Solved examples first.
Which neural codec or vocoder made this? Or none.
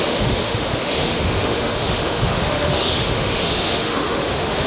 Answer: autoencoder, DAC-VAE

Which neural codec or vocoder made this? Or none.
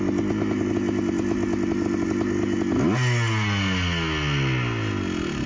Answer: none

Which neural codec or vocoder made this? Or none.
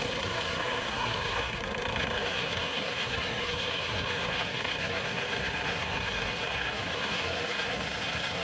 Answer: codec, SNAC